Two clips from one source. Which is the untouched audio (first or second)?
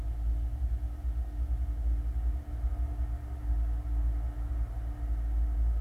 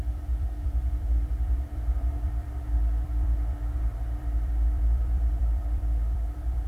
first